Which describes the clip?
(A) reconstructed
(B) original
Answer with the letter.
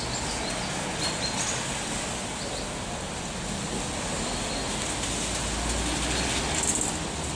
B